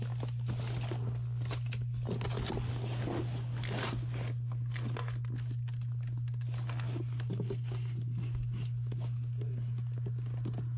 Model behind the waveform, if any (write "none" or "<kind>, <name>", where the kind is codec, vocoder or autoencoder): none